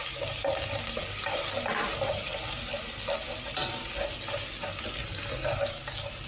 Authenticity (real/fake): real